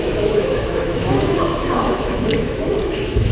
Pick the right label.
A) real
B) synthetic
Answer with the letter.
B